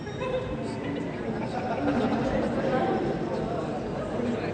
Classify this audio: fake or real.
real